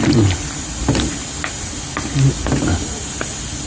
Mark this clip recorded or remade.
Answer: recorded